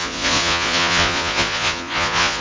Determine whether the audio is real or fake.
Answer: fake